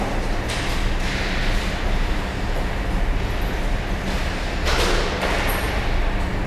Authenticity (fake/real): real